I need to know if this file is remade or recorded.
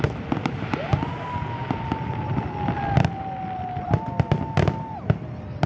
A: recorded